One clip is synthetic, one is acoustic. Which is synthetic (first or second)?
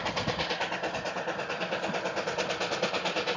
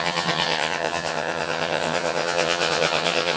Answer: second